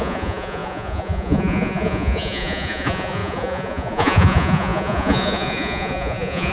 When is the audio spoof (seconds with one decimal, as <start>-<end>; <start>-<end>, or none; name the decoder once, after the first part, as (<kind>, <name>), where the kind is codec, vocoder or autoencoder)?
0.0-6.5 (vocoder, Vocos)